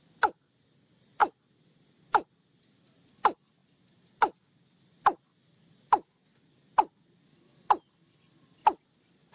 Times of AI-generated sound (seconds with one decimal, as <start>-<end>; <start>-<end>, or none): none

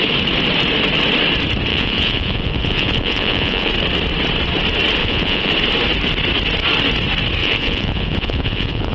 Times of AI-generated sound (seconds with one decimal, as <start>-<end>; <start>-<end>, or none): 1.7-3.7; 5.0-5.5; 7.4-8.9

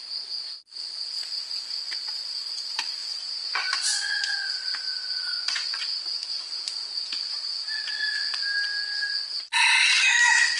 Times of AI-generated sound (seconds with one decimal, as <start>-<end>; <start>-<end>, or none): 3.0-4.5; 4.9-6.9

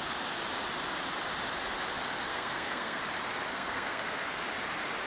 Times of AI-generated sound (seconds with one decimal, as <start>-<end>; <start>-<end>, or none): 2.3-3.0; 3.5-4.4

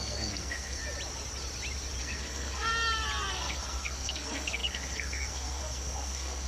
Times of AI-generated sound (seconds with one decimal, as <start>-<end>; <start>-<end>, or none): 0.0-0.8; 2.0-2.7; 3.3-6.5

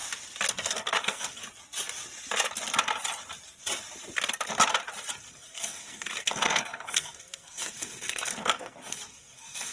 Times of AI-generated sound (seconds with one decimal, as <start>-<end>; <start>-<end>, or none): 0.5-1.4; 5.3-9.7

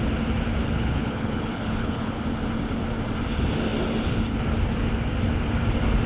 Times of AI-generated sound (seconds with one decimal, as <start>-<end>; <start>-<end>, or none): 0.6-2.2